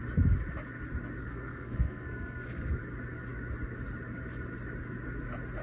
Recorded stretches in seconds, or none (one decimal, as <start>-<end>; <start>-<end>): 0.0-1.2; 2.8-5.6